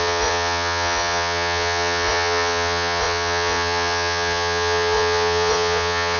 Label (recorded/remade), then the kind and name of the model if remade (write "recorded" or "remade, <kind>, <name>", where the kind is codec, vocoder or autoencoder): remade, vocoder, Vocos